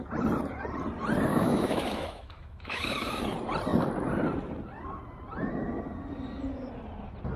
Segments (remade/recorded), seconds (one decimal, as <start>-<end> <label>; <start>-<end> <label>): 0.0-1.3 recorded; 1.3-3.2 remade; 3.2-7.4 recorded